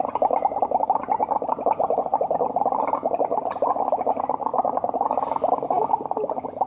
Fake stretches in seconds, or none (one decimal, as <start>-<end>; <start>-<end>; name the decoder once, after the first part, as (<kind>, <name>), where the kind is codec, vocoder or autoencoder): none